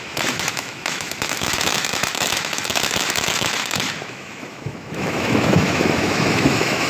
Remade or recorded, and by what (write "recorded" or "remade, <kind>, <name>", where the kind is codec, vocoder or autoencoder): remade, autoencoder, DAC-VAE